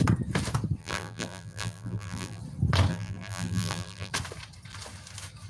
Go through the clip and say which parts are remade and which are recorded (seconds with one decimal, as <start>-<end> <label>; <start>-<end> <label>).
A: 0.0-0.8 recorded; 0.8-2.4 remade; 2.4-2.9 recorded; 2.9-4.1 remade; 4.1-5.5 recorded